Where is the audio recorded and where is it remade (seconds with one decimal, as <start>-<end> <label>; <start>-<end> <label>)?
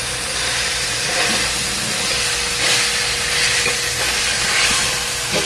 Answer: 0.0-5.5 recorded